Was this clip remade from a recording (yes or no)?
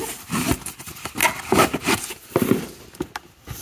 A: no